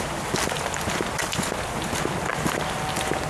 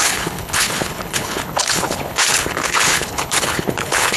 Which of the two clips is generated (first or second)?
second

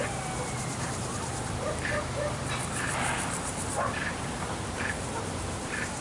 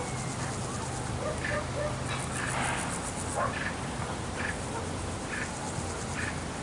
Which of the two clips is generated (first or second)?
first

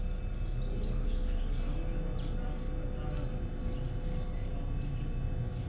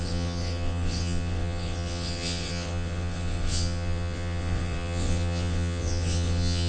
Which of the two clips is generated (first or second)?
second